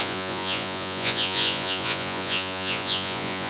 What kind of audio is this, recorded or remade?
remade